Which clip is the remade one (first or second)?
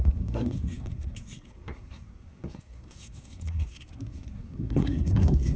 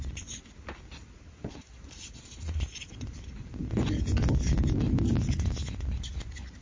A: first